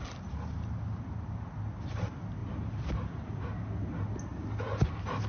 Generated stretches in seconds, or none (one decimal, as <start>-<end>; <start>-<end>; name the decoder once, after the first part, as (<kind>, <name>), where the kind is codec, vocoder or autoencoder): none